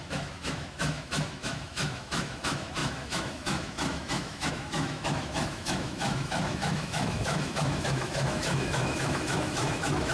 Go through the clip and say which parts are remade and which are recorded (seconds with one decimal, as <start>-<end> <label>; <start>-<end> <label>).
0.0-10.1 remade